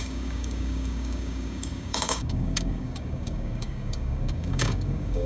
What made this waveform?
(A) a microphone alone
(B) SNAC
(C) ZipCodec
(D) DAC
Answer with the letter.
D